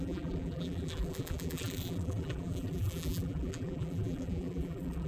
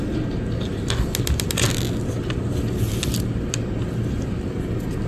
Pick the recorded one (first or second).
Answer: second